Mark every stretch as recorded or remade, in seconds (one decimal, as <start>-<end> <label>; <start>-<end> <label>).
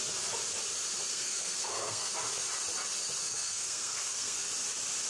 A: 0.0-1.1 recorded; 1.1-2.1 remade; 2.1-3.2 recorded; 3.2-4.5 remade; 4.5-5.1 recorded